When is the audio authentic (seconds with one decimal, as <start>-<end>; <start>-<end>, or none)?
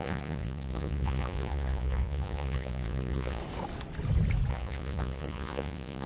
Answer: 3.4-4.5